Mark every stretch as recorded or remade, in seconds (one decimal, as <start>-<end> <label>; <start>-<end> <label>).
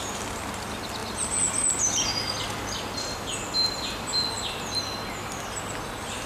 0.0-6.3 recorded